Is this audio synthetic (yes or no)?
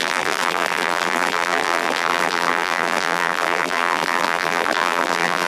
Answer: yes